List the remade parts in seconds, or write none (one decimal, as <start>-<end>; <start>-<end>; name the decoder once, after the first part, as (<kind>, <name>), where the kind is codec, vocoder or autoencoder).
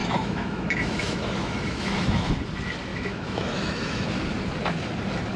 0.0-2.3 (autoencoder, DAC-VAE); 2.9-4.2